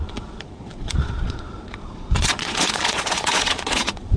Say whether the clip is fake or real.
fake